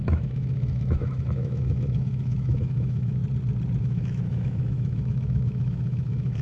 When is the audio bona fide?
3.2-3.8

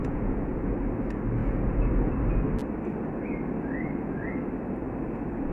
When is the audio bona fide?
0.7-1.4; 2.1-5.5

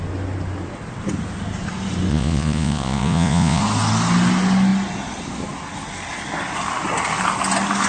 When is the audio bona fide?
0.0-2.1; 3.6-7.9

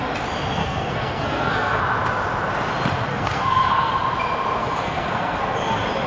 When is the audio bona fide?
0.0-0.6; 1.8-3.1; 3.9-4.6; 5.4-6.1

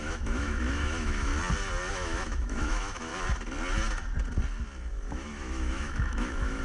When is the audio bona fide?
1.3-1.9; 3.1-4.9

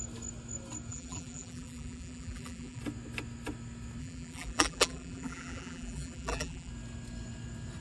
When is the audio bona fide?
0.0-0.9; 2.8-4.0; 6.7-7.8